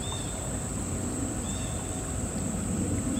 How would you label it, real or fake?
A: real